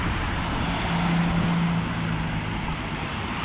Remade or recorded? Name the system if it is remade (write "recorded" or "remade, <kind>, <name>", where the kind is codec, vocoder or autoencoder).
recorded